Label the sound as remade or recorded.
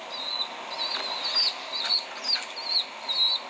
recorded